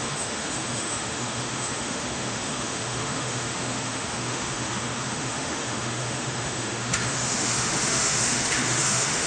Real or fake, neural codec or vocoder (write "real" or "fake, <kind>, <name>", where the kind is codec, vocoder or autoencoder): fake, autoencoder, DAC-VAE